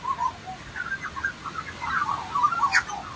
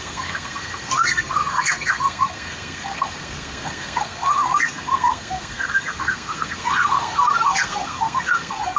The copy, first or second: second